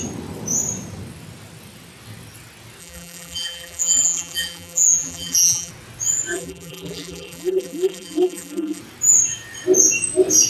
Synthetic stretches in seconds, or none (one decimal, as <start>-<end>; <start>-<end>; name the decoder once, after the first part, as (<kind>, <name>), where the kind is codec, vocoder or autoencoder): 2.8-5.7 (vocoder, BigVGAN v2); 6.3-8.8